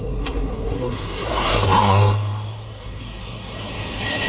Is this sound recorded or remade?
remade